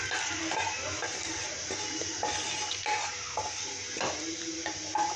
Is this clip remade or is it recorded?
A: recorded